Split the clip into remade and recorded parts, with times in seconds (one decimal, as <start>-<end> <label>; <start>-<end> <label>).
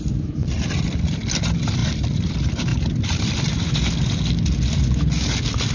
0.0-1.8 recorded; 1.8-2.3 remade; 2.3-2.7 recorded; 2.7-3.7 remade; 3.7-5.7 recorded